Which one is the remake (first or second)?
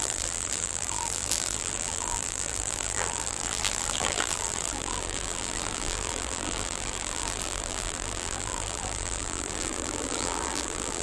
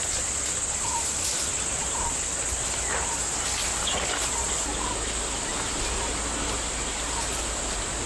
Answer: first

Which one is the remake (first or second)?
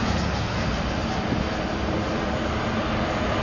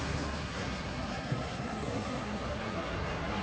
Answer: second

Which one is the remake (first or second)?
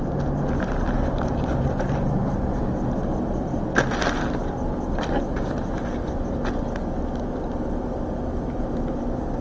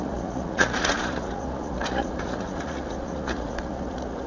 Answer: second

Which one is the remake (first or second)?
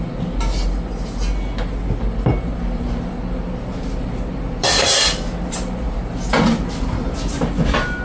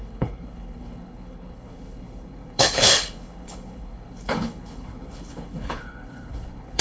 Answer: second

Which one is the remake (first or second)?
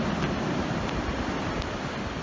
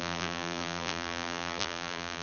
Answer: second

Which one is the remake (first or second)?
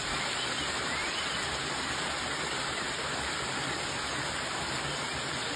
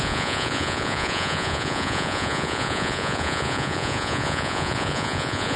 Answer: second